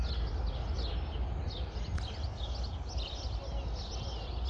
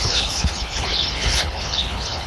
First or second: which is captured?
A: first